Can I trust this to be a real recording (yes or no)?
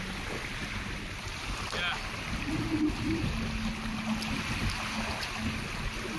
yes